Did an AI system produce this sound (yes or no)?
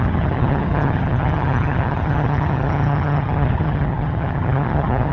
yes